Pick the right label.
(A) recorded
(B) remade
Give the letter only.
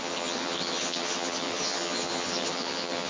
B